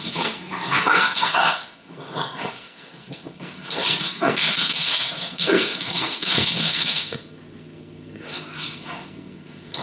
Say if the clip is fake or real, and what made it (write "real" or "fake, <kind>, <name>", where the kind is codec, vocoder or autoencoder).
fake, codec, SNAC